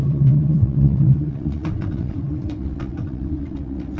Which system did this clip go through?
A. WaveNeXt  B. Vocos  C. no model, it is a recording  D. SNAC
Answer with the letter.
A